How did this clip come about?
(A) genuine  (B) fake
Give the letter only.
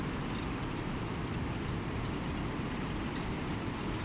A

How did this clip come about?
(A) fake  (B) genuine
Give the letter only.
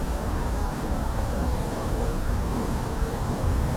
A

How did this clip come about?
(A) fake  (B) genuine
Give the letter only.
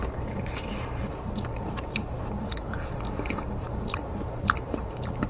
A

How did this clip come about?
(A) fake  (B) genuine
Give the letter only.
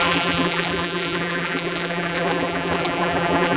A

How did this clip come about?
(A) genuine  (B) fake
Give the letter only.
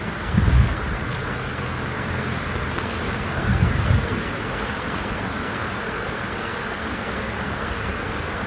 B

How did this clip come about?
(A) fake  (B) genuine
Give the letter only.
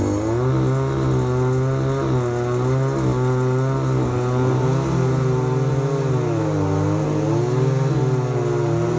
B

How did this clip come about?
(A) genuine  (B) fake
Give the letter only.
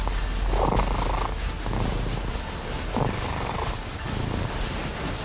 A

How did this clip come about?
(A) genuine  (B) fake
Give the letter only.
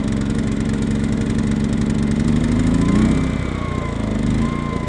A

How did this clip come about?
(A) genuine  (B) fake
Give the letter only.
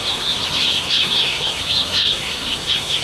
B